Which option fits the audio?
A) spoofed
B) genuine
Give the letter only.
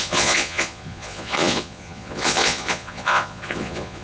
A